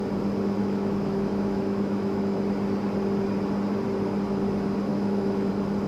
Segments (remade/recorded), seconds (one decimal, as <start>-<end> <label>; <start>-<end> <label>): 0.0-0.6 recorded; 0.6-2.4 remade; 2.4-4.9 recorded; 4.9-5.5 remade; 5.5-5.9 recorded